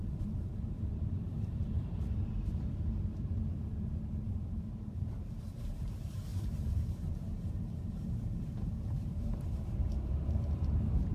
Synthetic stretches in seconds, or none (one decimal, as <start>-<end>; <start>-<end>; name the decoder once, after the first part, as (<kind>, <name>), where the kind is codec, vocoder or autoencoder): 0.0-11.1 (vocoder, BigVGAN v2)